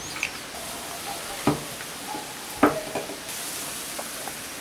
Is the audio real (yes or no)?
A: yes